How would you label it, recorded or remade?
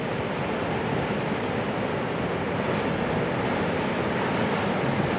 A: recorded